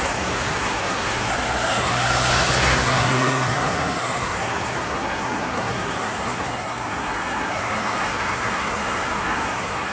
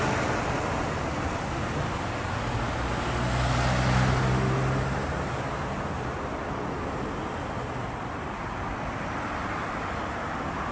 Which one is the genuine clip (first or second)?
second